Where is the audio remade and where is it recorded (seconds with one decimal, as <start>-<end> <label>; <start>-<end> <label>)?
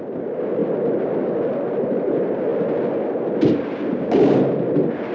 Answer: 0.0-3.9 recorded; 3.9-4.4 remade; 4.4-5.1 recorded